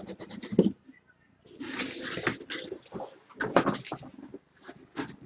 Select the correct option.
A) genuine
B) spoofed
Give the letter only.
A